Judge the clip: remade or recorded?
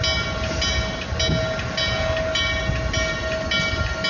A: recorded